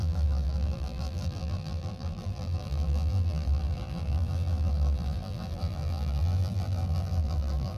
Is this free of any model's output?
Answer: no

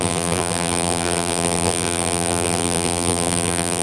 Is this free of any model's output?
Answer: no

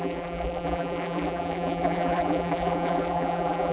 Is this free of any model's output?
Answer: no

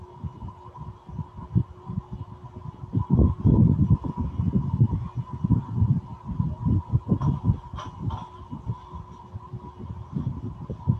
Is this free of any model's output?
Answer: yes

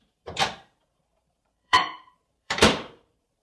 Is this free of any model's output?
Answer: no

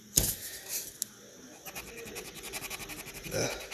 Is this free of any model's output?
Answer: yes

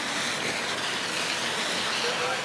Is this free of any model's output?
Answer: yes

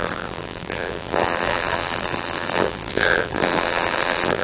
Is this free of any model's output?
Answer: no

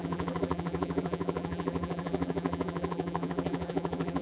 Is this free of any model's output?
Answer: no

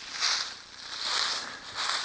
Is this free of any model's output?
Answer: yes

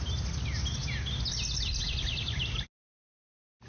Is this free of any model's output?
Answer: yes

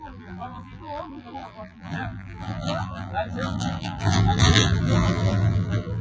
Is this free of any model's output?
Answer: no